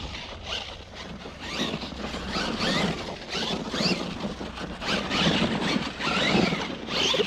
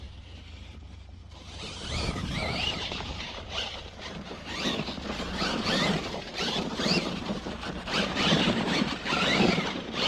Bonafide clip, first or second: first